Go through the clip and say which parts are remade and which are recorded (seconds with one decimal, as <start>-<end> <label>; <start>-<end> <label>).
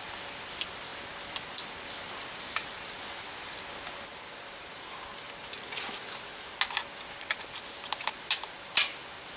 0.0-9.4 recorded